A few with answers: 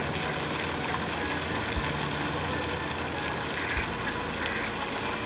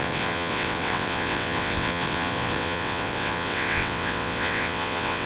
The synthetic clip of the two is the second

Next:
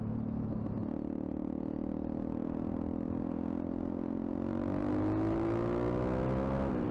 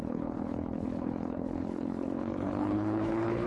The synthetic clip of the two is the second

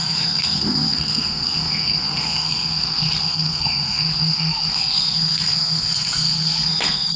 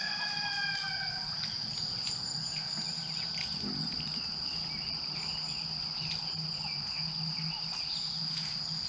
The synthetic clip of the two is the first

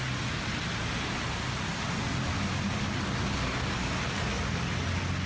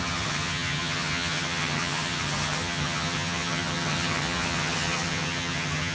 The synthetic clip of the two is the second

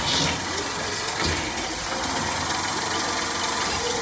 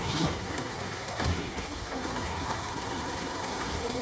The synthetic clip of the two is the second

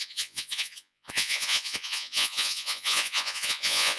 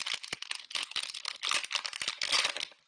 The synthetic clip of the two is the first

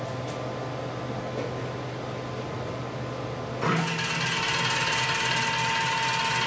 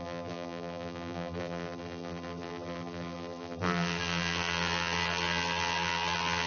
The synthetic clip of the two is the second